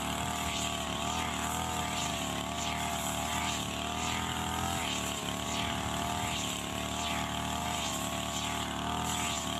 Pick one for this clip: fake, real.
real